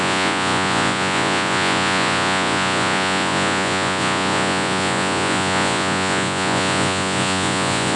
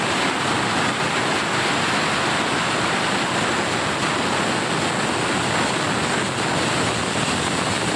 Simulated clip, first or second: first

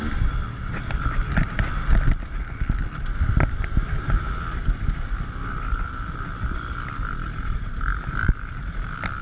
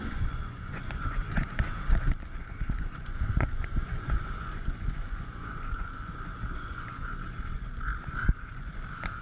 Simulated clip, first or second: second